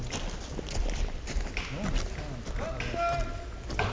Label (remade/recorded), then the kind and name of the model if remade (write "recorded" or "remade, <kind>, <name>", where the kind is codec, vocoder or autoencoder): recorded